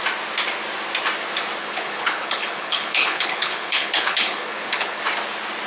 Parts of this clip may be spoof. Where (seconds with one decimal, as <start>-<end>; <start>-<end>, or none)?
1.6-5.0